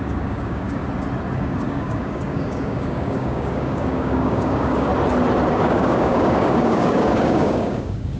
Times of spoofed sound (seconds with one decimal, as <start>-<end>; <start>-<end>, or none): 0.0-0.8; 1.4-4.9; 5.5-8.2